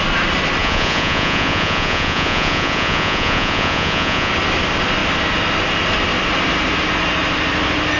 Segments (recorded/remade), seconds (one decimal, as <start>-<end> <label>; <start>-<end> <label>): 0.0-0.6 recorded; 0.6-4.3 remade; 4.3-8.0 recorded